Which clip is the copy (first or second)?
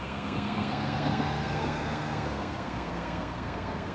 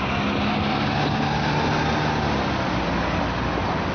first